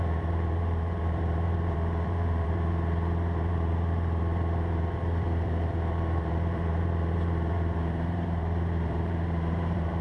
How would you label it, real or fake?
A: fake